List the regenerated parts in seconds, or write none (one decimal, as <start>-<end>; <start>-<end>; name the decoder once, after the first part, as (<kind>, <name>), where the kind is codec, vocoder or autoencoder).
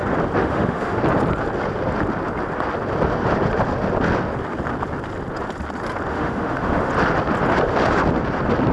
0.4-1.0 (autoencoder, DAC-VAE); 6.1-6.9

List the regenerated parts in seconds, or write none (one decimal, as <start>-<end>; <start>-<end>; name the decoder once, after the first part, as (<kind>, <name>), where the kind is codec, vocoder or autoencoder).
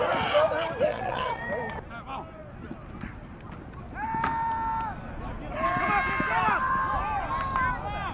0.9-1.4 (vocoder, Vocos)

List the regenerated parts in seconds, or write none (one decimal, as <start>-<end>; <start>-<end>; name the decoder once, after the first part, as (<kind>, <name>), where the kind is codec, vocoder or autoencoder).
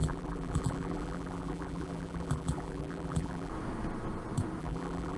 0.0-3.5 (vocoder, BigVGAN v2); 4.6-5.2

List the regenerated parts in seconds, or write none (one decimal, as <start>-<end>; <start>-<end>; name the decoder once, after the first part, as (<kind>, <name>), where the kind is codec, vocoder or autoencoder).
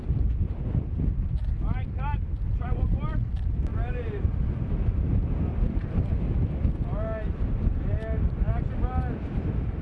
none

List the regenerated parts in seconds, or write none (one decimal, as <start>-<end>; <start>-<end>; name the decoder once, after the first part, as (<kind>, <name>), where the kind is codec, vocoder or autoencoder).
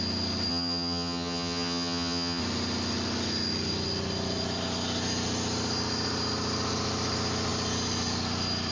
0.5-2.4 (vocoder, HiFi-GAN)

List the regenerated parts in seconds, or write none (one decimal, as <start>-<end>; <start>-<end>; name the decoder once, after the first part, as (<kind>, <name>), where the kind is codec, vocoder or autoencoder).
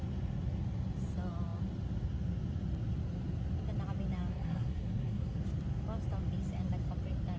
4.3-5.4 (codec, SNAC)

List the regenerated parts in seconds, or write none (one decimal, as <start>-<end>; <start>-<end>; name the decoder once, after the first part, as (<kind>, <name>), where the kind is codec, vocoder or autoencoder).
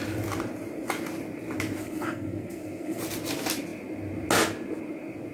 1.8-3.0 (codec, SNAC)